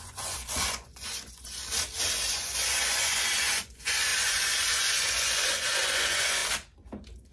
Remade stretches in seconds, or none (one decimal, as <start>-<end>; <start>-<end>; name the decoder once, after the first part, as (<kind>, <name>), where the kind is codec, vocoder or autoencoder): 0.0-1.6 (vocoder, Vocos); 2.3-6.4